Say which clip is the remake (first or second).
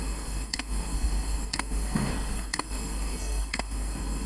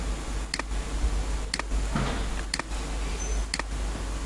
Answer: first